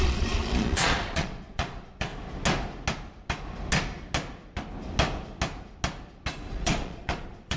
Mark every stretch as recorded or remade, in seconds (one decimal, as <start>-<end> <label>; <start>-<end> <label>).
0.0-2.1 remade; 2.1-6.5 recorded; 6.5-7.6 remade